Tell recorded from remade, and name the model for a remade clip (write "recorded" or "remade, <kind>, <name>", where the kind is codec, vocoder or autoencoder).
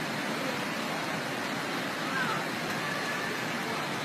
recorded